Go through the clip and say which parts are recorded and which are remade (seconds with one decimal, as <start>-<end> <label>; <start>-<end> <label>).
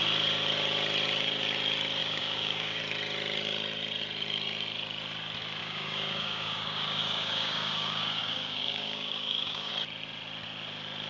0.0-2.0 recorded; 2.0-2.8 remade; 2.8-5.6 recorded; 5.6-9.7 remade; 9.7-11.1 recorded